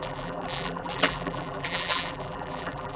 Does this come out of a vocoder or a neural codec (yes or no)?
yes